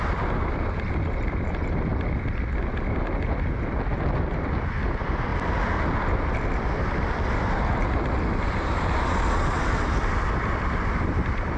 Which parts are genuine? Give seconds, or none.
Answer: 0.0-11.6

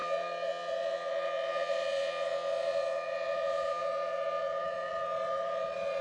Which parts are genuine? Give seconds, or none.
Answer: none

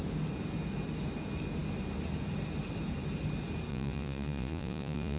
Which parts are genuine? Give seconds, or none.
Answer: 0.0-3.7

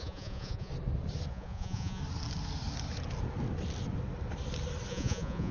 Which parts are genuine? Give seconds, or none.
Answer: 0.7-1.3; 2.0-4.9

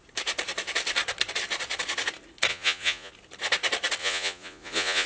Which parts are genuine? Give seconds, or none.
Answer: 0.0-2.5; 3.1-4.0